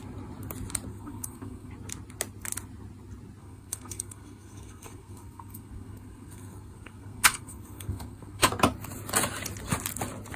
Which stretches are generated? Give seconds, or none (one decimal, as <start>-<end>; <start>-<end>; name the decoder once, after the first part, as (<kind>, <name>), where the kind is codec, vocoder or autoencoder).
0.9-1.7 (codec, SNAC); 3.4-8.5